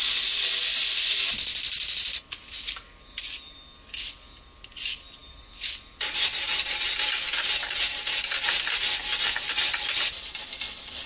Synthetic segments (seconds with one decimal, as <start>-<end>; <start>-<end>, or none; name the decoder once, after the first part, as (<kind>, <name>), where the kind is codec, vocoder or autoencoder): none